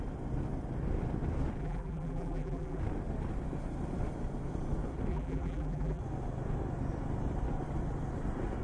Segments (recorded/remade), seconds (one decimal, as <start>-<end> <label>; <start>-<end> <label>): 0.0-1.6 recorded; 1.6-2.8 remade; 2.8-5.1 recorded; 5.1-6.0 remade; 6.0-8.6 recorded